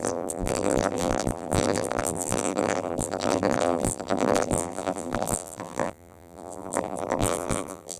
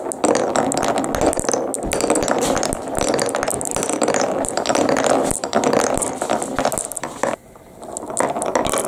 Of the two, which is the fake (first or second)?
first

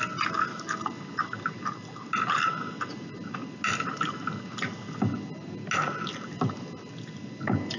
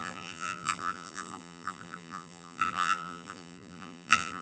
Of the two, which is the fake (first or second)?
second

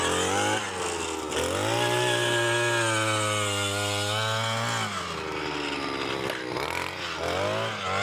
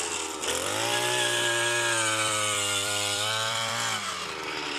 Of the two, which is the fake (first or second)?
second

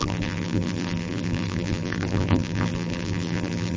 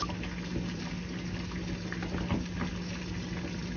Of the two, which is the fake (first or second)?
first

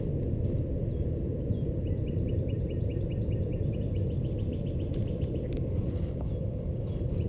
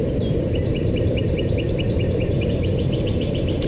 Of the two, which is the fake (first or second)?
second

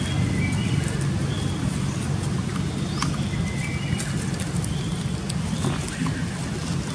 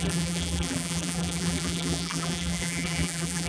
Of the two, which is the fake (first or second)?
second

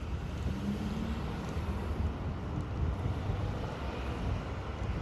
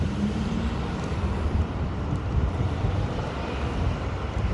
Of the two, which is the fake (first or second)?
second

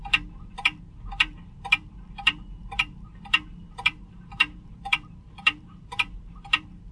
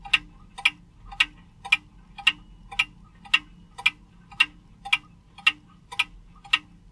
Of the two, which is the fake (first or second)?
first